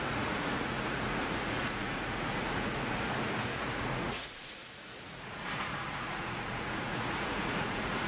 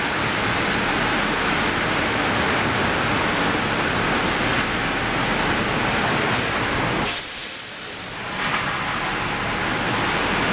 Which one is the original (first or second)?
second